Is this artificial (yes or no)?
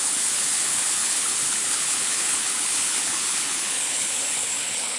yes